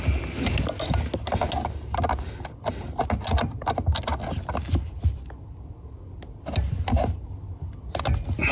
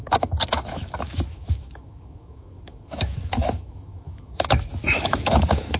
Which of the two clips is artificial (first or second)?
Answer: second